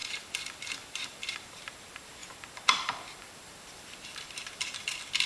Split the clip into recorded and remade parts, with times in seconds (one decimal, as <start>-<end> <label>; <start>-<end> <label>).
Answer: 0.0-5.3 remade